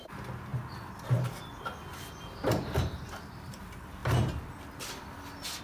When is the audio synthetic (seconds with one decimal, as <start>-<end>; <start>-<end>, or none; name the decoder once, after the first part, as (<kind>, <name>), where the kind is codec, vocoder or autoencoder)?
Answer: none